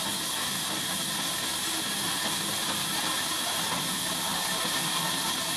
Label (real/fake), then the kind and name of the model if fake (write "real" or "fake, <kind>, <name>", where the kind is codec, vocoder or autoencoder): real